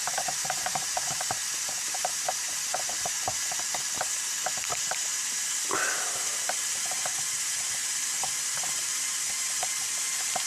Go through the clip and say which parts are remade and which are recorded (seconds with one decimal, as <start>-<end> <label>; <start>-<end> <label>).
0.0-3.2 remade; 3.2-4.9 recorded; 4.9-10.5 remade